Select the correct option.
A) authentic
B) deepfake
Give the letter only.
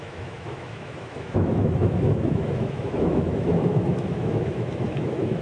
B